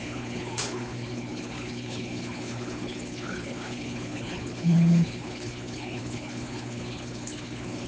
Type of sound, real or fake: fake